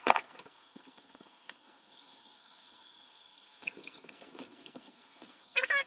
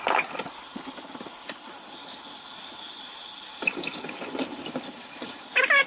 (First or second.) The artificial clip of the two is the first